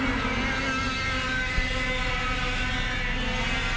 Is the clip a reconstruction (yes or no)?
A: no